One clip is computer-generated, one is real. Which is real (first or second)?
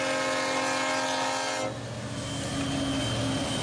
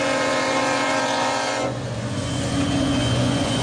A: first